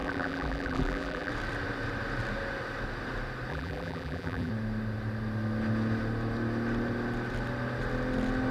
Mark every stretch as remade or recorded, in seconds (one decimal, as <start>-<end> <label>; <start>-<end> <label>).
0.0-1.3 remade; 1.3-3.5 recorded; 3.5-4.5 remade; 4.5-8.5 recorded